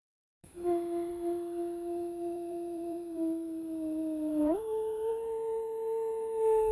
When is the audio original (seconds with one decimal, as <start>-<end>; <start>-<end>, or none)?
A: 0.0-1.1; 5.1-6.7